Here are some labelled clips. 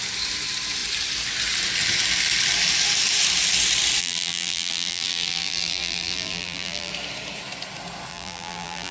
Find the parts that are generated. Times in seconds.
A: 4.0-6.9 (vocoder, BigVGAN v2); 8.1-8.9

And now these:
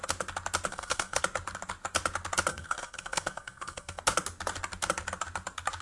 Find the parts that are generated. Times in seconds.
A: 0.7-1.2 (codec, SNAC); 2.5-4.0

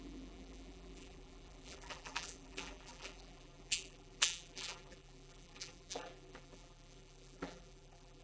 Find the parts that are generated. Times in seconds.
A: 0.0-8.2 (vocoder, BigVGAN v2)

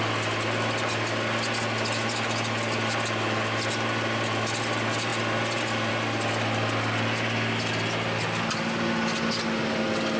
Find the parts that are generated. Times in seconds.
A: none

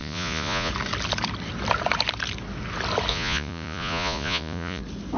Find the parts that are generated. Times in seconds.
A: 0.0-0.7 (vocoder, Vocos); 3.1-4.8